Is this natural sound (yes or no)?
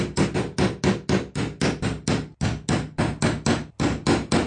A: yes